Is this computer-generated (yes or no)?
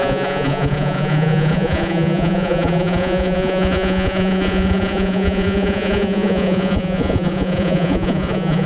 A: yes